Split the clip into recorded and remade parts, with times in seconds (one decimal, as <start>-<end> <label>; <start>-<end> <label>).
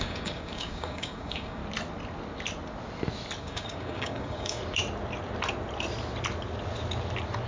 0.0-1.6 remade; 1.6-3.4 recorded; 3.4-4.6 remade; 4.6-7.5 recorded